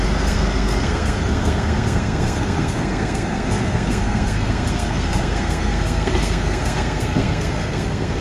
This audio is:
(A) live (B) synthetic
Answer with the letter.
B